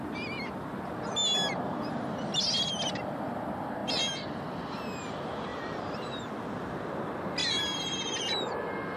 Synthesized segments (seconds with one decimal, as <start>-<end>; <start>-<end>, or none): 5.5-6.3; 7.4-8.6